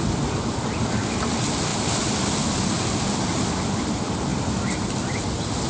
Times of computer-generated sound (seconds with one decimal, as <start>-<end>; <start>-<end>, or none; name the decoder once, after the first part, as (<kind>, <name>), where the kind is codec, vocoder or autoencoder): none